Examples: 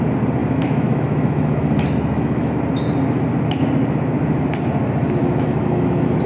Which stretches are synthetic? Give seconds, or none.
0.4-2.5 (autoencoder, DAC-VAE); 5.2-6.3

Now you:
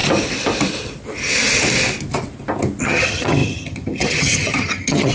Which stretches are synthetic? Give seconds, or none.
2.8-5.1 (vocoder, HiFi-GAN)

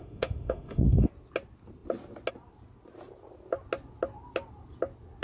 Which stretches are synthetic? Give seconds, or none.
0.0-1.1 (autoencoder, DAC-VAE)

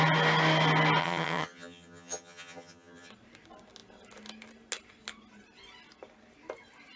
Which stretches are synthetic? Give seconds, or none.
1.0-3.1 (vocoder, HiFi-GAN)

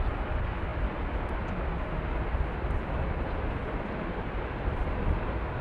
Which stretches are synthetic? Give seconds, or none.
3.6-5.0 (vocoder, BigVGAN v2)